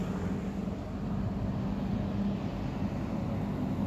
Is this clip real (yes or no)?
yes